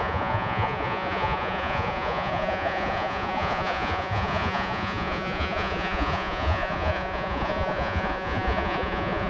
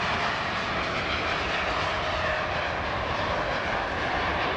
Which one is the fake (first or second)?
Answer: first